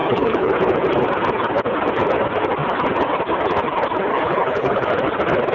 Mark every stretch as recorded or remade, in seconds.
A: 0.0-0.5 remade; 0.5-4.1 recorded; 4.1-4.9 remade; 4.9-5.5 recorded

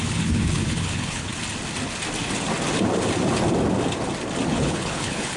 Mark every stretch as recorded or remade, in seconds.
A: 0.0-1.3 remade; 1.3-4.5 recorded; 4.5-5.4 remade